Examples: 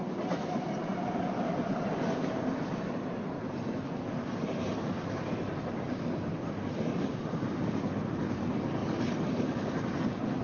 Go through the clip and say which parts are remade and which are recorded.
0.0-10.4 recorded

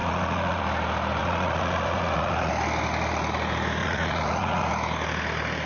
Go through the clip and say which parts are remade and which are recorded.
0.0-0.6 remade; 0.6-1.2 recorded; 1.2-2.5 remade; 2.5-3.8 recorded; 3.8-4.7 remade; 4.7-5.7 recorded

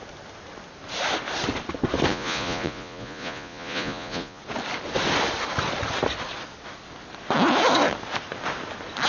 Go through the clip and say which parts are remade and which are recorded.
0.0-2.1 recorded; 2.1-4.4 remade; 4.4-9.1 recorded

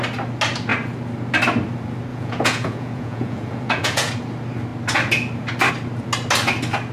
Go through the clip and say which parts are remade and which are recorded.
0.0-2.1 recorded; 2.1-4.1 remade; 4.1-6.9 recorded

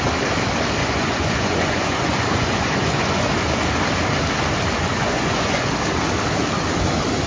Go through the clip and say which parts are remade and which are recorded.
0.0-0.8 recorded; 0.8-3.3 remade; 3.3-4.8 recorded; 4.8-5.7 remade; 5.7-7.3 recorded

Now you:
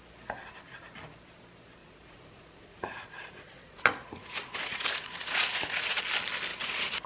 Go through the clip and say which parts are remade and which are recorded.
0.0-1.8 recorded; 1.8-6.0 remade; 6.0-6.5 recorded; 6.5-7.1 remade

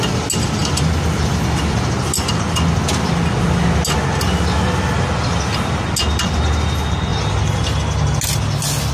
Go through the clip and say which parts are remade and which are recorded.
0.0-8.9 recorded

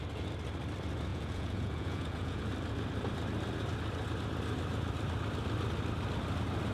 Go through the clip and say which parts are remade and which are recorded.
0.0-1.1 recorded; 1.1-2.5 remade; 2.5-6.7 recorded